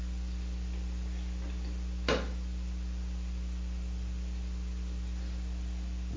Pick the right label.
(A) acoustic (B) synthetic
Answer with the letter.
A